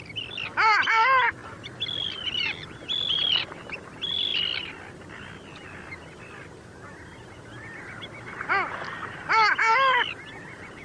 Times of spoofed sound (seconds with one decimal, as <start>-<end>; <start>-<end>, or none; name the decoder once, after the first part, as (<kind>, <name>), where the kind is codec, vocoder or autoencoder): none